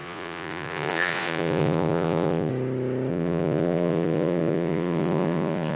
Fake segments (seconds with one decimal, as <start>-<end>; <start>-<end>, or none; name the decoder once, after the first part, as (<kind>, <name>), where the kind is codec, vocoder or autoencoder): 0.0-2.5 (vocoder, Vocos); 3.1-5.8

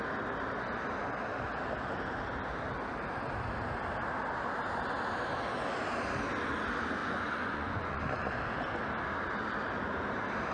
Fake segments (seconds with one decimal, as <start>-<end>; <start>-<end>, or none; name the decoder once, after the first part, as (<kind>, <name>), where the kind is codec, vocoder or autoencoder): 7.0-8.3 (vocoder, Vocos)